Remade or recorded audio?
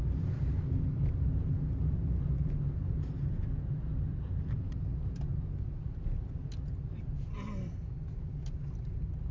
recorded